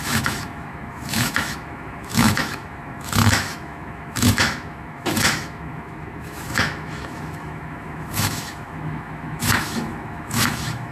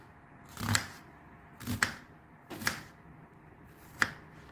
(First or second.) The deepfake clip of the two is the first